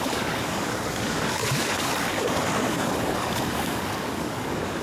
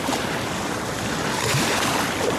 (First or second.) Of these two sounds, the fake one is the first